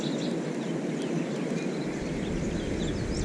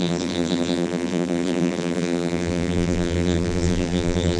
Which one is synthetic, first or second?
second